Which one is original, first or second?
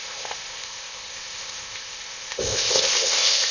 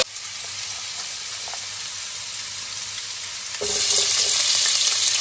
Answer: second